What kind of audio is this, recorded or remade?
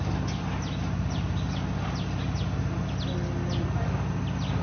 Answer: recorded